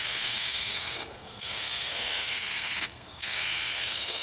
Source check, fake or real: fake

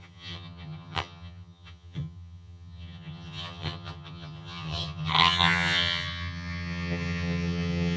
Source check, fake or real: fake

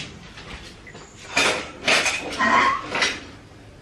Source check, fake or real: real